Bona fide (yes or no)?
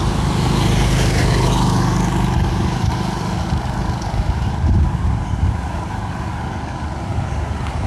no